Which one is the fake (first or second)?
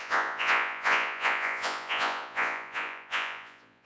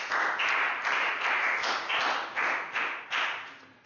first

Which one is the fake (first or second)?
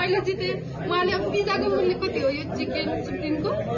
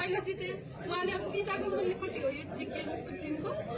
second